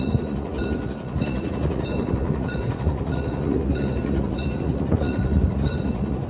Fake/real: fake